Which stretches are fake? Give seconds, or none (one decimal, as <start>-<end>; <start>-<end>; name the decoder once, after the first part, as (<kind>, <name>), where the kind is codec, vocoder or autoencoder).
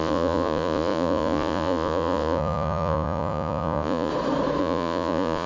0.0-4.1 (vocoder, Vocos); 4.6-5.5